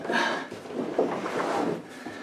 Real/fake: real